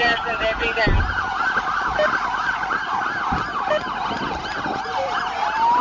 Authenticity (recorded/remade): recorded